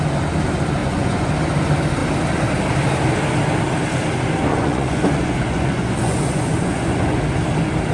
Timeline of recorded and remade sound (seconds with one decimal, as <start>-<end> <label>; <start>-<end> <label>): 0.0-0.8 recorded; 0.8-1.3 remade; 1.3-4.5 recorded; 4.5-7.2 remade; 7.2-7.9 recorded